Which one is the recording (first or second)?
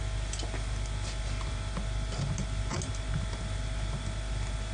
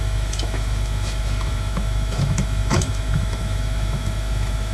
first